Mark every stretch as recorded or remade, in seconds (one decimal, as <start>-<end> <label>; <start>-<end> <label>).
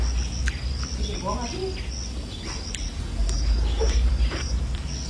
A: 0.0-3.2 recorded; 3.2-4.6 remade; 4.6-5.1 recorded